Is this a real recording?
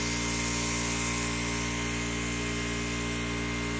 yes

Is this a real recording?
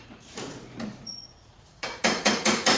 no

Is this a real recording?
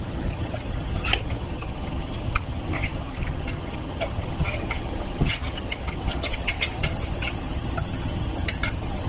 no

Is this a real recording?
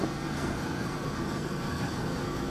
no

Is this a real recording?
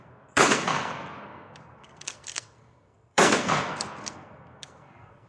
no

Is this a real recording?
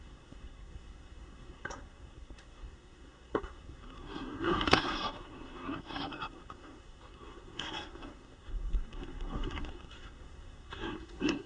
no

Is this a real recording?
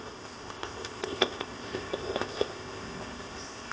no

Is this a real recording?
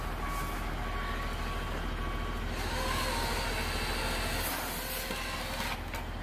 yes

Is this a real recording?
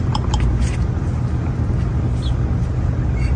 yes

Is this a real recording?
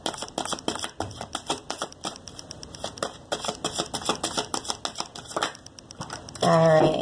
yes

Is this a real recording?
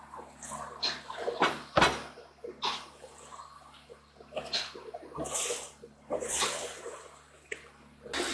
yes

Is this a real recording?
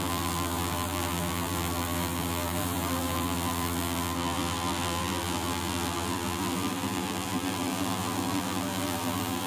no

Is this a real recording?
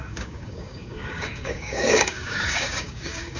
no